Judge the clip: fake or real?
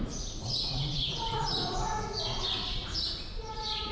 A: fake